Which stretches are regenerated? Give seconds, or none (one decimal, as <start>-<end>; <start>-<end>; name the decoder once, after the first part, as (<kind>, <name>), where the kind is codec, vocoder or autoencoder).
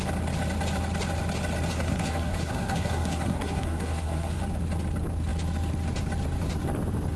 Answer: 1.7-4.4 (codec, SNAC)